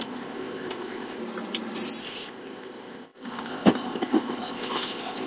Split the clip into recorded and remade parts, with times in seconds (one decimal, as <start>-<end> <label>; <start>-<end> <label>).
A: 0.0-1.2 remade; 1.2-2.0 recorded; 2.0-5.3 remade